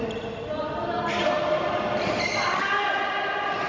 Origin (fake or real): real